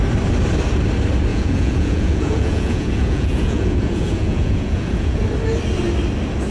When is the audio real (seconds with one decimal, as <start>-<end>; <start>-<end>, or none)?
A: 0.0-1.3; 5.2-6.5